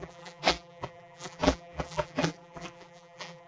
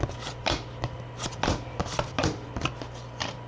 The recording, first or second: second